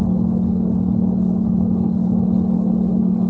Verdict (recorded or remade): remade